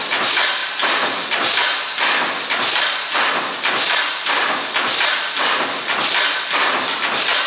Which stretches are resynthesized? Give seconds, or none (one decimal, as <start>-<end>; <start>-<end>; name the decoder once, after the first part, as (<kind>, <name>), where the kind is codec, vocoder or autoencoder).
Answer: none

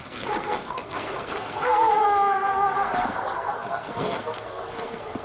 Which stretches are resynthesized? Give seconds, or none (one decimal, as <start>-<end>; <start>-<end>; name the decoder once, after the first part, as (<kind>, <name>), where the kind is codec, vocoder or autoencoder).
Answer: 0.0-5.2 (codec, SNAC)

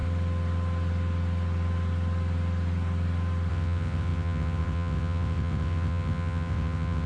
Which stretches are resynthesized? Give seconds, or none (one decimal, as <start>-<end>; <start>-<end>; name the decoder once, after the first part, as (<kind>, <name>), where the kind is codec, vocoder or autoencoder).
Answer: 3.5-7.1 (vocoder, WaveNeXt)

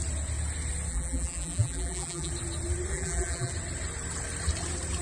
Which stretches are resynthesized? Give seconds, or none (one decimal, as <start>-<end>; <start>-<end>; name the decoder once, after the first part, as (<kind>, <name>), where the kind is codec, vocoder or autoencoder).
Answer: 0.9-2.3 (vocoder, BigVGAN v2); 2.9-3.5

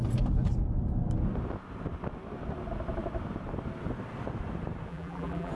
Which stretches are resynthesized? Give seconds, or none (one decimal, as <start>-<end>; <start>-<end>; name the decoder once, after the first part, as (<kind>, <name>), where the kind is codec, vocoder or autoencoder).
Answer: 4.9-5.5 (vocoder, BigVGAN v2)

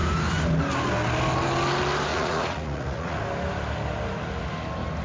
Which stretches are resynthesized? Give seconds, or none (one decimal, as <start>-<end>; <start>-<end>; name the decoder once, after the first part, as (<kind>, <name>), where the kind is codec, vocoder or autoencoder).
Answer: 2.1-3.2 (vocoder, Vocos)